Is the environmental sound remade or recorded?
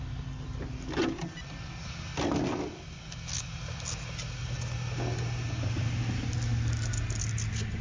recorded